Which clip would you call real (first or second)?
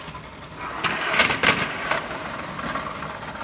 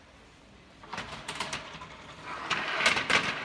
first